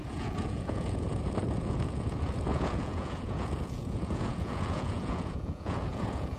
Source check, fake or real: fake